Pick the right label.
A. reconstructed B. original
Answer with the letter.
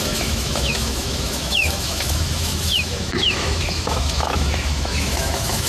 A